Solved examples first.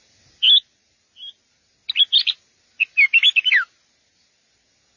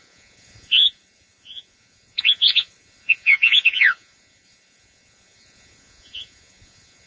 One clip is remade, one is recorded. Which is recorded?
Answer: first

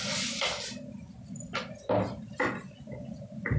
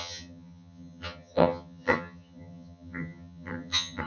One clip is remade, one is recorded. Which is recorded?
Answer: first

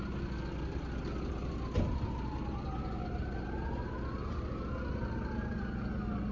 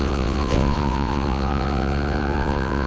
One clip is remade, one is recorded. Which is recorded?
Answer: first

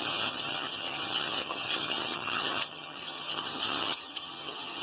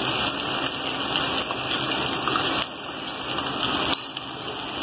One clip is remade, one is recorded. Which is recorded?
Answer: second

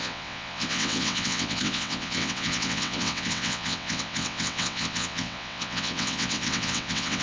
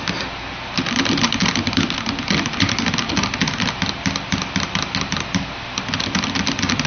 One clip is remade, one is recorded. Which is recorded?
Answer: second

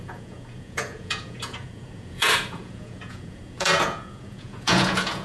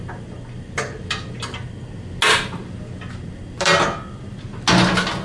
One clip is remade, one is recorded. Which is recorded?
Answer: second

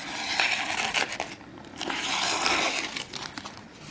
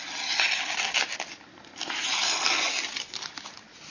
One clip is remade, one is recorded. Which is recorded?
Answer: second